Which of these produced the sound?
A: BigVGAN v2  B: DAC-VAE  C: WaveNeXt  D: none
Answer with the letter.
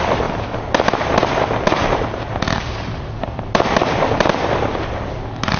D